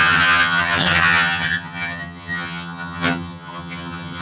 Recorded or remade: remade